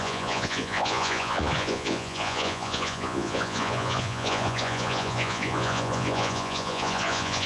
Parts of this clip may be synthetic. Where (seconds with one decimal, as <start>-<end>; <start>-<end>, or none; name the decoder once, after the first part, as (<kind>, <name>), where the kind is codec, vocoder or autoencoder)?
0.0-7.5 (vocoder, Vocos)